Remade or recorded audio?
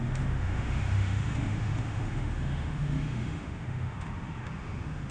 remade